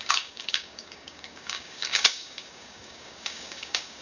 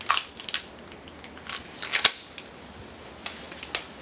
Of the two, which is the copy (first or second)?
first